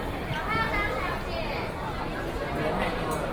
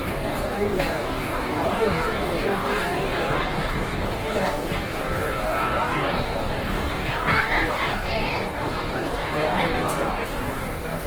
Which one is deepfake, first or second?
second